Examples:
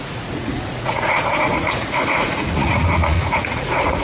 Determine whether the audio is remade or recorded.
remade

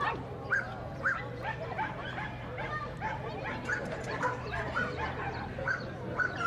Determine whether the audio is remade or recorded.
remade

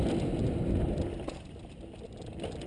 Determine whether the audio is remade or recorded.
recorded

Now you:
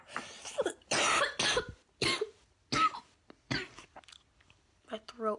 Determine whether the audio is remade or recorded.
recorded